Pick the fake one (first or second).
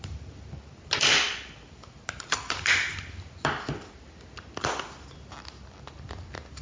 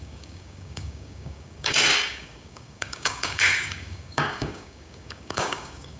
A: second